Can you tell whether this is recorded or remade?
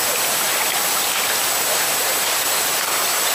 remade